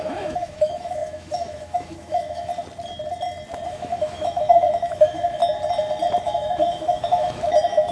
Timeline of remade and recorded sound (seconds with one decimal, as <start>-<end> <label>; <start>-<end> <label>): 0.0-2.5 remade; 2.5-3.7 recorded; 3.7-5.4 remade; 5.4-6.2 recorded; 6.2-7.9 remade